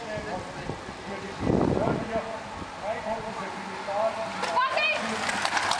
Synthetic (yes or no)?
no